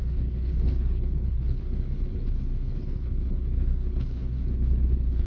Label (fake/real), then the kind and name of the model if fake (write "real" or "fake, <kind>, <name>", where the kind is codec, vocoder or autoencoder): fake, codec, HILCodec